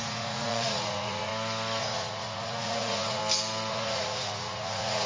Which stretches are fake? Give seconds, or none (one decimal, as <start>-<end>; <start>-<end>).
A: 0.0-1.3; 1.8-3.2; 3.7-5.1